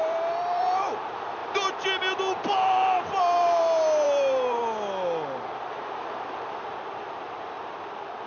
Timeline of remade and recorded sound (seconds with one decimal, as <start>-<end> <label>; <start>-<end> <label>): 0.0-1.4 remade; 1.4-3.2 recorded; 3.2-4.6 remade; 4.6-5.6 recorded; 5.6-8.3 remade